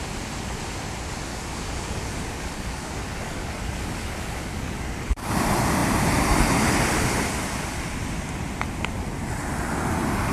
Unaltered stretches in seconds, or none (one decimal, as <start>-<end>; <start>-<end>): 0.0-1.3; 5.3-10.3